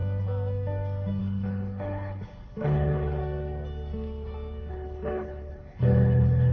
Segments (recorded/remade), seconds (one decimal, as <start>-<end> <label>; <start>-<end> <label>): 0.0-1.2 recorded; 1.2-3.2 remade; 3.2-4.7 recorded; 4.7-6.5 remade